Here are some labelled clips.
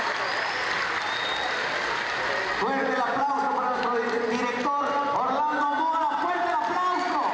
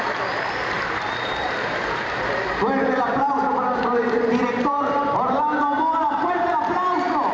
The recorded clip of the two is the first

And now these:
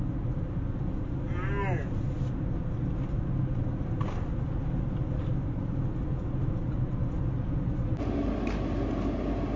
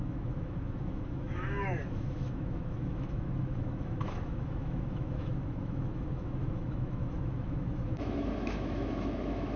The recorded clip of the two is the first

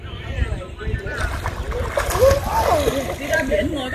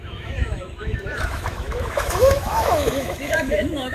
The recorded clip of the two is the first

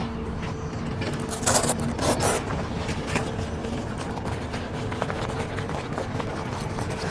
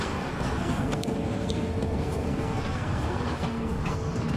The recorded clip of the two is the first